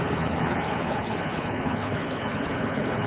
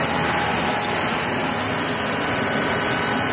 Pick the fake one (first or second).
first